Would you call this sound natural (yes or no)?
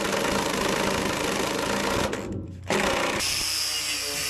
yes